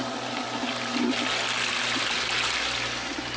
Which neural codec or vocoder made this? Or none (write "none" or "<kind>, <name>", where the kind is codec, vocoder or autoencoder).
none